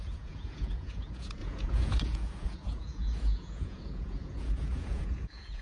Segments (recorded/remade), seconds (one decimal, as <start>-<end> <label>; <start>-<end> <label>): 0.0-5.6 remade